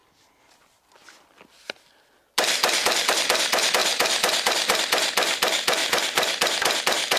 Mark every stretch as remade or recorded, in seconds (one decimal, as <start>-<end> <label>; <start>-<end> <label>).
0.0-3.1 remade; 3.1-3.8 recorded; 3.8-4.8 remade; 4.8-5.8 recorded; 5.8-6.8 remade; 6.8-7.2 recorded